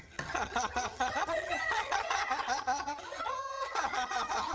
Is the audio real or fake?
fake